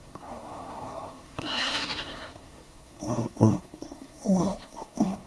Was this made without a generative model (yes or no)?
no